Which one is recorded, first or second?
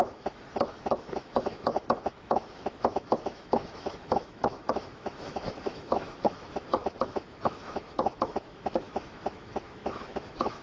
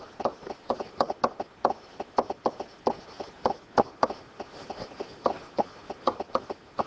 second